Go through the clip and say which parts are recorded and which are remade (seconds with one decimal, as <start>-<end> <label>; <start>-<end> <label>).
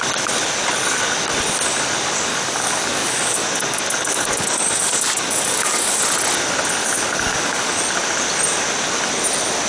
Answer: 0.0-2.3 recorded; 2.3-6.0 remade; 6.0-6.8 recorded; 6.8-7.8 remade; 7.8-9.7 recorded